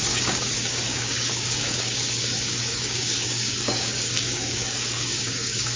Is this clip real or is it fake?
fake